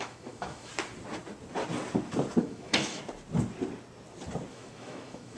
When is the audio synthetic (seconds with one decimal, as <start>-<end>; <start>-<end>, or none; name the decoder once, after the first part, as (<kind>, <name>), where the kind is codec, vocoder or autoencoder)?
0.0-0.7 (autoencoder, DAC-VAE); 2.4-3.0; 4.5-5.4